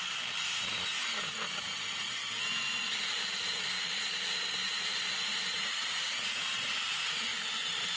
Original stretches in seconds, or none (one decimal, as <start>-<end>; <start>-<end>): 2.2-3.1; 7.3-8.0